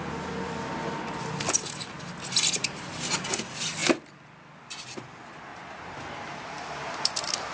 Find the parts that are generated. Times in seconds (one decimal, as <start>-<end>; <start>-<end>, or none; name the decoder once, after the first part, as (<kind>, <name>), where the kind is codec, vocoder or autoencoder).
none